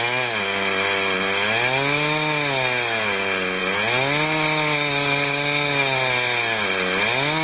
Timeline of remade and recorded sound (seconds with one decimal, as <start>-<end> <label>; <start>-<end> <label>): 0.0-7.4 recorded